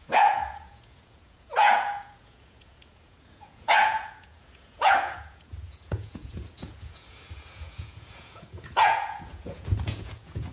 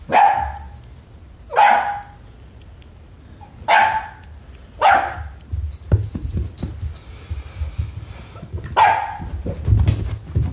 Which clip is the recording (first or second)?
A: second